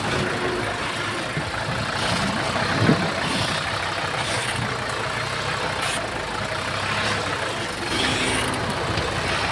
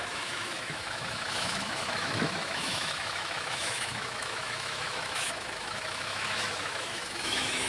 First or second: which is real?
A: first